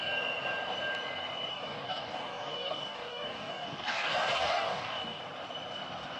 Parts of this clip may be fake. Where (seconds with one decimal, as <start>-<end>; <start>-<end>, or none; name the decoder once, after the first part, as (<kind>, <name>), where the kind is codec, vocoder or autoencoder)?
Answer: 1.5-5.2 (codec, DAC)